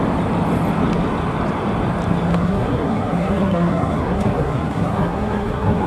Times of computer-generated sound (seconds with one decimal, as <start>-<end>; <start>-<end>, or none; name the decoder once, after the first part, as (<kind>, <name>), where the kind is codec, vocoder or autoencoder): 2.3-5.9 (codec, SNAC)